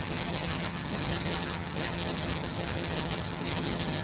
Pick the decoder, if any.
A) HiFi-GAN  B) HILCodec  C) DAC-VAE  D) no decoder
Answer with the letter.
A